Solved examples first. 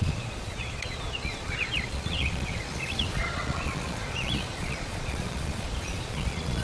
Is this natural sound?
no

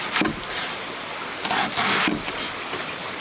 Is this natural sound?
yes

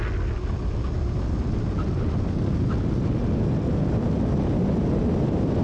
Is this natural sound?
yes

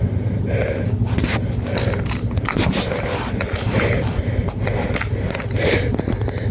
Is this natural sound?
yes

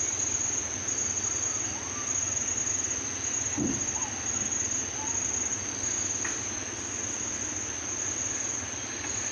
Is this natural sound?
yes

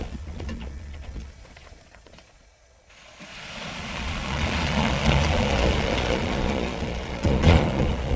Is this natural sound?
no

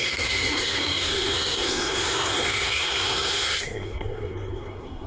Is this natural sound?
no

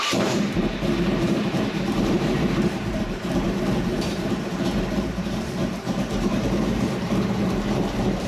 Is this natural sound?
no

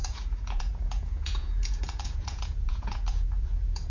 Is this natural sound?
no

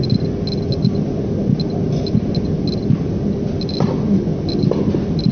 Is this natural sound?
yes